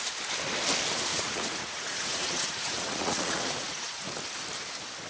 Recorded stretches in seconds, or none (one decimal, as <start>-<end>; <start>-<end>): 0.0-1.1; 4.1-5.1